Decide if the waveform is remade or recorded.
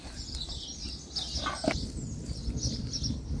recorded